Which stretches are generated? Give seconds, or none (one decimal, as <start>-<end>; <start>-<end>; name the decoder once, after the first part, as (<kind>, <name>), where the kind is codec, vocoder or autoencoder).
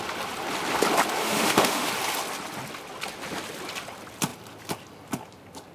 1.2-1.9 (autoencoder, DAC-VAE)